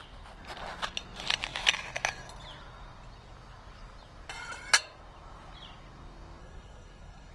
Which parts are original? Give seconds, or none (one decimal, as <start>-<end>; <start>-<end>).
0.0-6.4